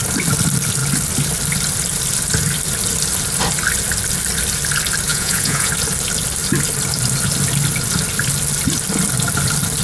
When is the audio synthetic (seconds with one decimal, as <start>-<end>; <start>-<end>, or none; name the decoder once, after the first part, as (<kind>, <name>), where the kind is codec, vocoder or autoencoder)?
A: 5.1-5.7 (vocoder, Vocos)